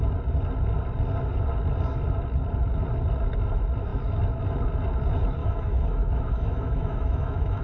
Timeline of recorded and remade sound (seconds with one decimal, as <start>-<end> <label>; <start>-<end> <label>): 0.0-5.4 recorded; 5.4-7.6 remade